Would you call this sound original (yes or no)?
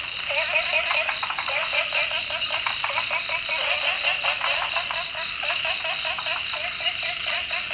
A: yes